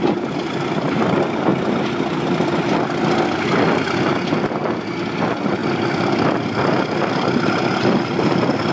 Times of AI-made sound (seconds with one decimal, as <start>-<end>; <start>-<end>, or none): 5.6-8.7